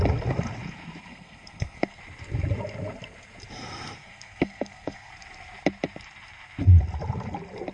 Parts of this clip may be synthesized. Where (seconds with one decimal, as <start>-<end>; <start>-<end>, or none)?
1.1-2.0; 4.0-5.1